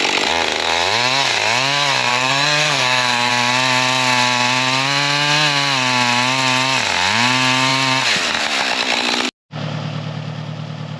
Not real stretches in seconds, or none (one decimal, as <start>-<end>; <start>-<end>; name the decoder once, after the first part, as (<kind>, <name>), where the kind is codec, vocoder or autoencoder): 2.1-3.3 (codec, SNAC)